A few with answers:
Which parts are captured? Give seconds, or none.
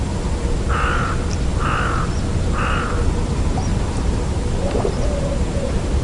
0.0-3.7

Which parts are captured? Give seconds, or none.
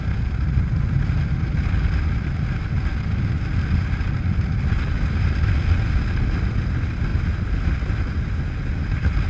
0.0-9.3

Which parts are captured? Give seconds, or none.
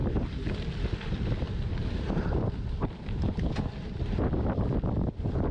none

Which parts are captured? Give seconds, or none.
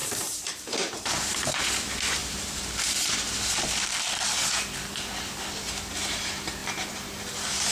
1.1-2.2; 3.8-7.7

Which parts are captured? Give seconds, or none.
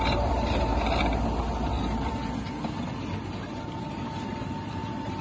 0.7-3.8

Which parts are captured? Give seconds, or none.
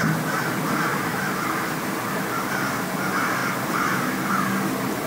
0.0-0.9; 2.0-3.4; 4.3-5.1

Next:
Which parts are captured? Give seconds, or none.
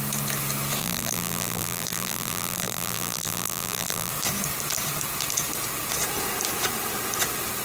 0.0-0.8; 4.1-7.6